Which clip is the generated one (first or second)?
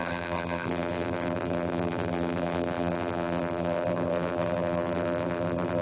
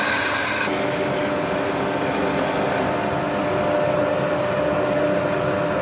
first